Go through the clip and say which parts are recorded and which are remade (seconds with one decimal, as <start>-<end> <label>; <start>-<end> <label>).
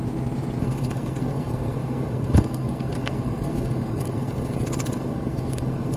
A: 0.0-0.6 recorded; 0.6-6.0 remade